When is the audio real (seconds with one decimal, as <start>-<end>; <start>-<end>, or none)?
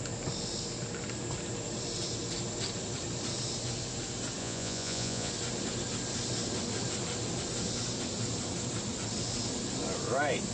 0.0-4.4; 5.3-10.5